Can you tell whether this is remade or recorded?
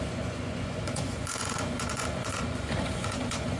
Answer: remade